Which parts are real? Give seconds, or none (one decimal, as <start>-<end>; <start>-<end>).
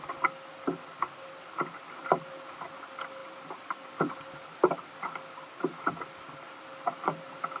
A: 0.0-7.6